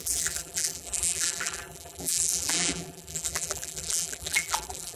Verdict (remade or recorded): remade